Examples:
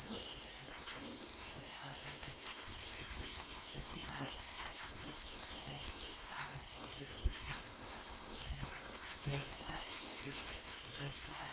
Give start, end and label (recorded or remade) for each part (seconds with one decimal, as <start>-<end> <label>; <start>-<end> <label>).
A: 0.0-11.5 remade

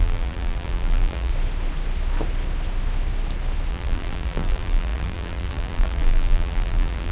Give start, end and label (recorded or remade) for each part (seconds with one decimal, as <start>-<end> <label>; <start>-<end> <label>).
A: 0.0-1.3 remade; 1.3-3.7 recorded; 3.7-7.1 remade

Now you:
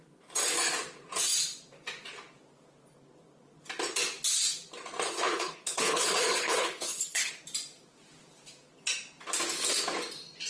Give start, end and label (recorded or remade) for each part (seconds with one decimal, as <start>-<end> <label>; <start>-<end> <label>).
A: 0.0-5.1 recorded; 5.1-7.4 remade; 7.4-10.5 recorded